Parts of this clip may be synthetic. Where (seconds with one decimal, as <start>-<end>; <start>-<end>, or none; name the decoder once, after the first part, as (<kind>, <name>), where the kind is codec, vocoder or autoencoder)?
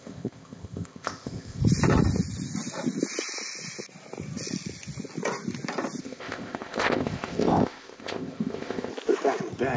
0.0-1.6 (codec, ZipCodec); 6.0-8.9